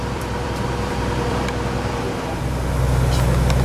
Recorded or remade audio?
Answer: remade